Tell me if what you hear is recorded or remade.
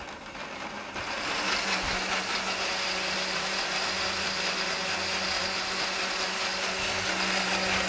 recorded